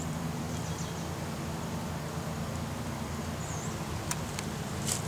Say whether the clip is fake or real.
fake